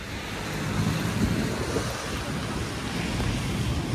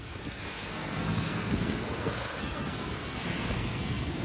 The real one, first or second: first